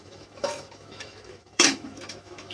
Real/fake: fake